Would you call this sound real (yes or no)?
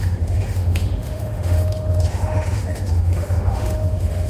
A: no